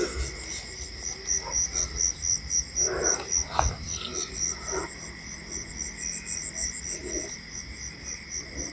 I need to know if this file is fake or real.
real